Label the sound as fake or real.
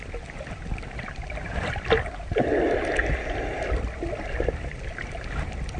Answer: real